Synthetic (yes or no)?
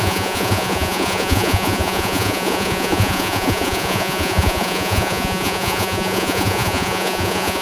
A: yes